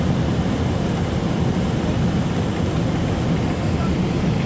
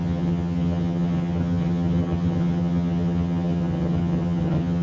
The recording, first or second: first